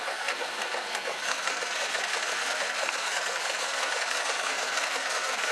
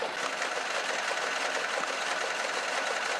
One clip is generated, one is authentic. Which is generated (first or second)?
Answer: first